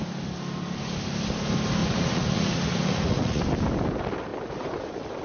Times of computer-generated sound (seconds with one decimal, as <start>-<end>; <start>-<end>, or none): 1.8-3.4